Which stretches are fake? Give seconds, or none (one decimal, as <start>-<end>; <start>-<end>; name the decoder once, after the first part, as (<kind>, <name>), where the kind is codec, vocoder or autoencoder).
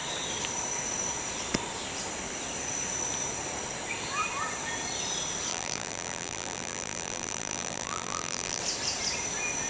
5.5-8.6 (vocoder, BigVGAN v2)